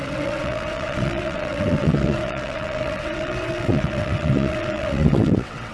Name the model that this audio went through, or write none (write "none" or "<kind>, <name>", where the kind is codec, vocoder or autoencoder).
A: vocoder, WaveNeXt